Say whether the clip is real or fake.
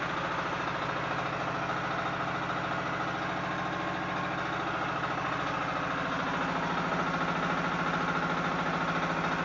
real